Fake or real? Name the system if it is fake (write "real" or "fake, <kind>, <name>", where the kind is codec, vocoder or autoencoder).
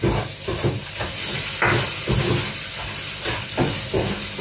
real